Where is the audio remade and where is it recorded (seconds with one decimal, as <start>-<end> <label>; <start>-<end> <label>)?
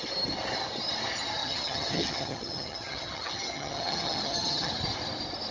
0.0-1.4 recorded; 1.4-4.7 remade; 4.7-5.5 recorded